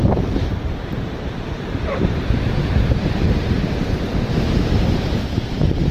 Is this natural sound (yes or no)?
no